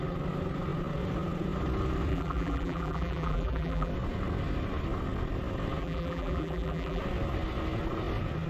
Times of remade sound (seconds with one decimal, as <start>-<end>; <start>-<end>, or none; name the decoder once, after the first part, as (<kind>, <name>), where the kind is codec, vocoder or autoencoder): 2.1-3.9 (vocoder, BigVGAN v2); 5.8-7.0